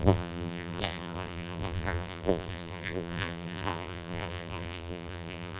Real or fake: fake